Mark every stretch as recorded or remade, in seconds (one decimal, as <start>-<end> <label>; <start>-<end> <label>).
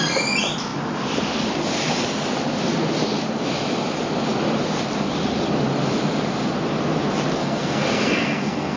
0.0-7.4 recorded; 7.4-8.8 remade